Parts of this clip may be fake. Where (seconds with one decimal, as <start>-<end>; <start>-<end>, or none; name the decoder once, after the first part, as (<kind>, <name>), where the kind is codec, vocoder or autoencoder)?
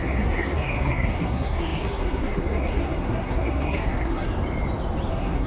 0.0-4.3 (codec, SNAC); 5.1-5.5